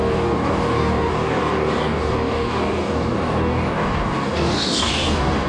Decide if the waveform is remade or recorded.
remade